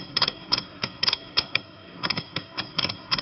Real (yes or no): no